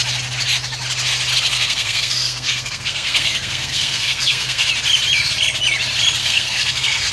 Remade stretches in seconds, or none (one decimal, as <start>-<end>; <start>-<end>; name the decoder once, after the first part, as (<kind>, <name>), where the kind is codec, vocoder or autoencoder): 1.5-4.7 (codec, SNAC); 6.2-7.1